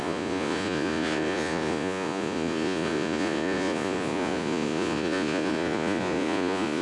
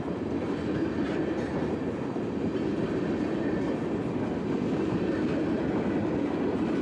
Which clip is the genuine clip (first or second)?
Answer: second